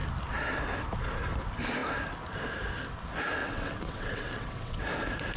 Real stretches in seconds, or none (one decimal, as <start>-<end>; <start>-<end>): 0.0-3.4; 4.8-5.4